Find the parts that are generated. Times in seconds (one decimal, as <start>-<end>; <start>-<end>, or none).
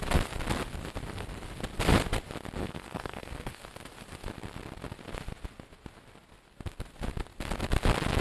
2.6-3.6